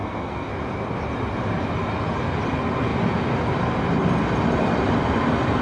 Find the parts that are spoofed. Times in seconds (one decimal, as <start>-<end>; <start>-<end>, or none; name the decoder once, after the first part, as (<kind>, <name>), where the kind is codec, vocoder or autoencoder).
0.0-0.5 (codec, SNAC)